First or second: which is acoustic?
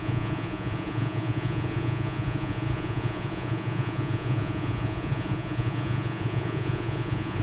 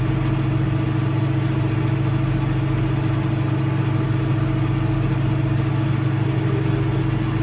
second